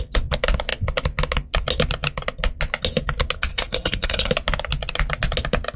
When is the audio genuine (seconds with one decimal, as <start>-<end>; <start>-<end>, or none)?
0.0-3.5; 4.3-5.8